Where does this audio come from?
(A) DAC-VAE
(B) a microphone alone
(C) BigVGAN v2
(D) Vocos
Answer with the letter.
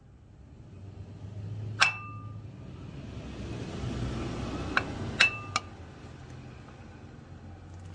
B